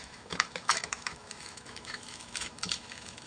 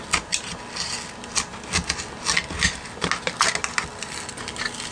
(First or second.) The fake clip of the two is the first